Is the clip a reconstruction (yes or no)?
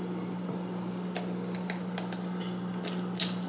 no